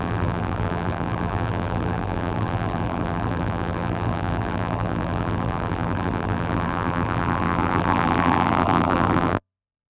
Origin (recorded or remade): remade